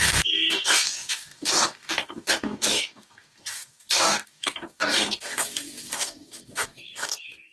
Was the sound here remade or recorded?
remade